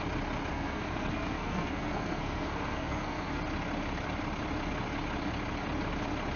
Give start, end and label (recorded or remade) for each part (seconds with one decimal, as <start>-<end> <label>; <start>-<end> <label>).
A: 0.0-0.5 recorded; 0.5-3.4 remade; 3.4-6.4 recorded